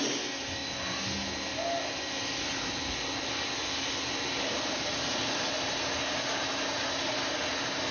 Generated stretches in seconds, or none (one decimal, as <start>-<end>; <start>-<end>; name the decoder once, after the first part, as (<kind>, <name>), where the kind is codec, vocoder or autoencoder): none